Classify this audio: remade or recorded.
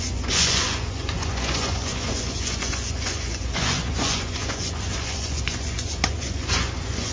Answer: remade